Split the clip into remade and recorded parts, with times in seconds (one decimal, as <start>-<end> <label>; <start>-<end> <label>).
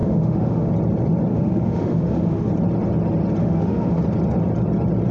0.0-0.7 remade; 0.7-1.3 recorded; 1.3-2.5 remade; 2.5-3.4 recorded; 3.4-4.0 remade; 4.0-5.1 recorded